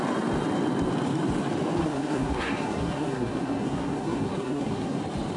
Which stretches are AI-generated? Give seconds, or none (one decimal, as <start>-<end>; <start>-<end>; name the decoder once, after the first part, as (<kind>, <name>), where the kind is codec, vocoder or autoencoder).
1.8-5.0 (codec, SNAC)